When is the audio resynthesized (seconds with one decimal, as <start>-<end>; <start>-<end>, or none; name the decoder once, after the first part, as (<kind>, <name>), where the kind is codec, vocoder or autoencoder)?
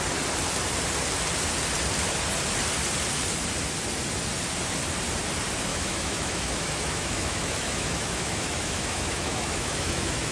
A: 5.7-10.3 (autoencoder, DAC-VAE)